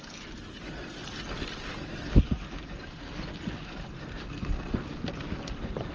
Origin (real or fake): real